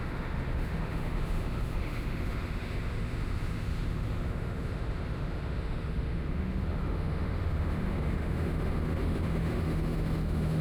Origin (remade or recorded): remade